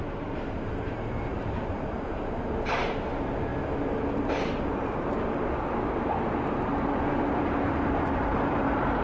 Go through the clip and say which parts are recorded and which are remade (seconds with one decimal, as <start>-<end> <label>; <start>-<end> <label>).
0.0-3.5 remade; 3.5-4.2 recorded; 4.2-9.0 remade